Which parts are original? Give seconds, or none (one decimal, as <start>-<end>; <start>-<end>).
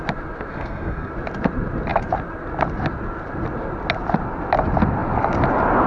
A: 0.0-0.5; 1.1-5.9